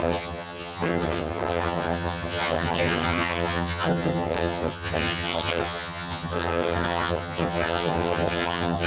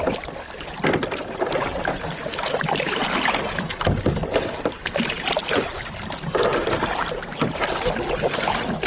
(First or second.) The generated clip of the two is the first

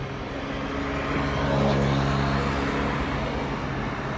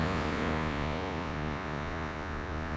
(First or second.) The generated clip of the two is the second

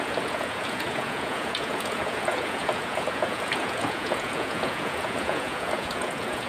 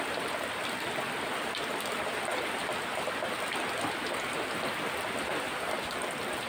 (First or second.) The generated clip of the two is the first